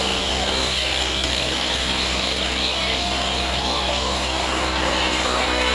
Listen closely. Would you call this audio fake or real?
fake